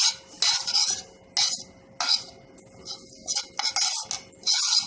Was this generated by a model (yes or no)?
no